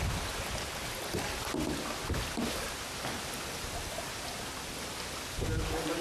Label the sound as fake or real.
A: real